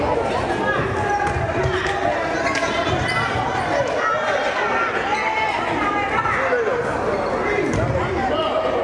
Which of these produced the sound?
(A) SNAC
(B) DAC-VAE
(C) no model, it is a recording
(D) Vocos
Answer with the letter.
C